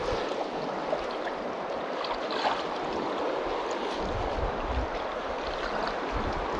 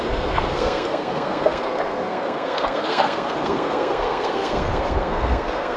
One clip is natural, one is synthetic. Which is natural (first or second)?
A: first